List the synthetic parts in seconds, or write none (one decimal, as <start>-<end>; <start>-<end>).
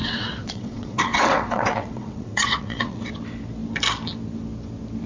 0.0-3.1